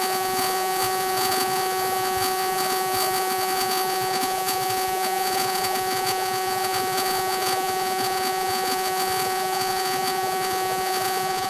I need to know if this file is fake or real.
fake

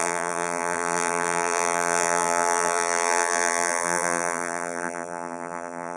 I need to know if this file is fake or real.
fake